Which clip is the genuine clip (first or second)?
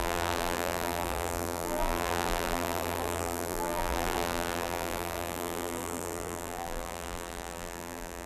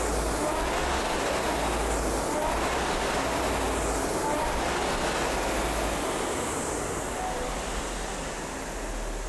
second